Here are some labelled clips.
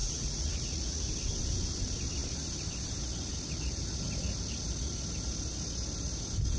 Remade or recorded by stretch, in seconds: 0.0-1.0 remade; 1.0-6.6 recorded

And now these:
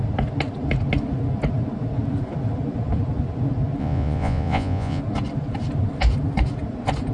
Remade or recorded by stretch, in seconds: 0.0-3.8 recorded; 3.8-5.0 remade; 5.0-7.1 recorded

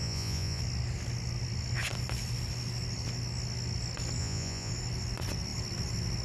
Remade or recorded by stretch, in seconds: 0.0-0.6 remade; 0.6-4.2 recorded; 4.2-4.7 remade; 4.7-6.2 recorded

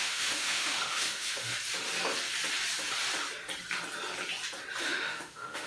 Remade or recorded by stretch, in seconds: 0.0-1.5 remade; 1.5-4.8 recorded; 4.8-5.7 remade

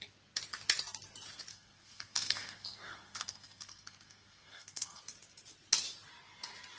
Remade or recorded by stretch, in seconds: 0.0-1.5 recorded; 1.5-5.0 remade; 5.0-6.8 recorded

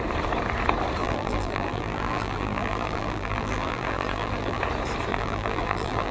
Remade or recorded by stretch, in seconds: 0.0-1.0 recorded; 1.0-4.6 remade; 4.6-5.1 recorded; 5.1-6.1 remade

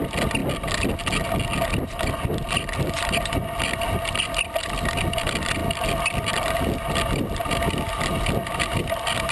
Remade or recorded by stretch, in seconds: 0.0-9.3 recorded

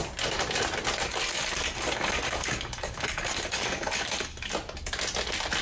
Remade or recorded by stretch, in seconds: 0.0-1.1 recorded; 1.1-4.5 remade; 4.5-5.6 recorded